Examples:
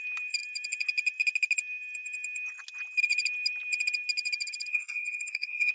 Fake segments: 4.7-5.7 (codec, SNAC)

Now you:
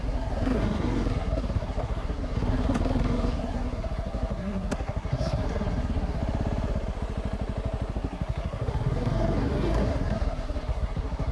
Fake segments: 0.0-6.2 (codec, SNAC); 7.9-11.3

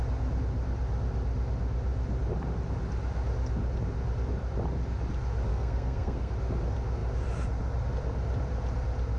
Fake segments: 5.5-6.3 (codec, SNAC)

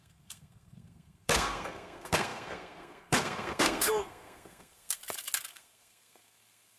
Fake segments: 0.0-5.0 (codec, SNAC); 5.5-6.8

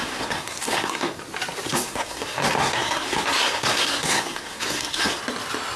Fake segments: 0.0-1.2 (codec, SNAC); 1.7-5.2

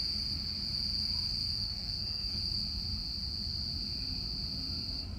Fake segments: 1.4-2.4 (codec, SNAC)

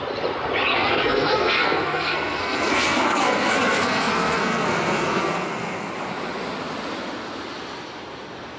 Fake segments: 0.7-5.9 (codec, SNAC)